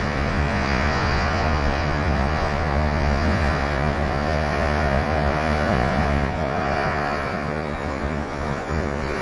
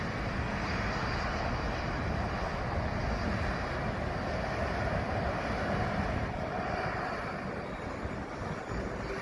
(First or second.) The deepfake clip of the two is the first